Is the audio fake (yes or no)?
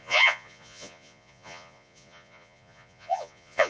yes